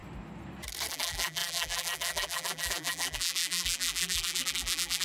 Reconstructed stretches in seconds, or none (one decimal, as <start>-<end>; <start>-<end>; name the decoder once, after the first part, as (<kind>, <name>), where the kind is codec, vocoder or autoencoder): 0.9-5.0 (vocoder, BigVGAN v2)